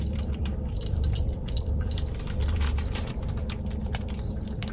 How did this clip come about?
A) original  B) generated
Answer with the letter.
B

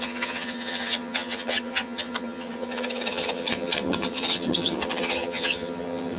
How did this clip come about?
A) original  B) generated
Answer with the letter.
B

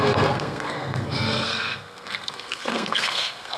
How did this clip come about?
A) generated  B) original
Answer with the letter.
A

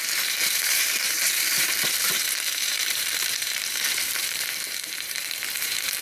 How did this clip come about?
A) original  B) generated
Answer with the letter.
B